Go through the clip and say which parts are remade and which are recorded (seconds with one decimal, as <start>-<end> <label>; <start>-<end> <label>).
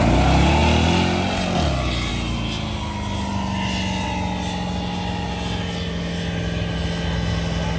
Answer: 0.0-7.8 recorded